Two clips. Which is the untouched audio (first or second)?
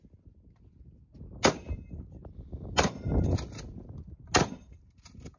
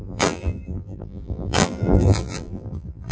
first